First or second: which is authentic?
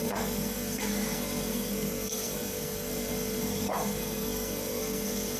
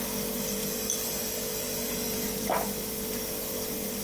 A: second